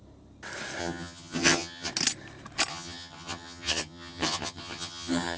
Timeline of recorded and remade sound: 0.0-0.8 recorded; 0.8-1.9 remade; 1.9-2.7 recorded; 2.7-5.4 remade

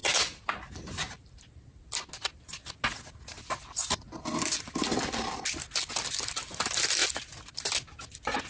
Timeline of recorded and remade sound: 0.0-8.5 recorded

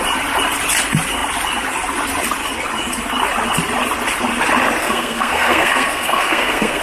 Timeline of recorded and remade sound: 0.0-4.8 recorded; 4.8-6.8 remade

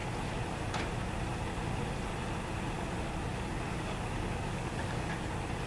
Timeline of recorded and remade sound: 0.0-3.7 recorded; 3.7-5.3 remade; 5.3-5.7 recorded

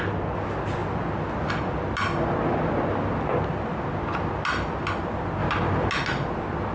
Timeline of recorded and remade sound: 0.0-6.7 recorded

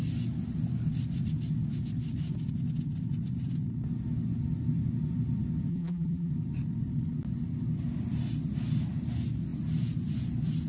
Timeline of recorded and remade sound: 0.0-5.7 recorded; 5.7-6.3 remade; 6.3-10.7 recorded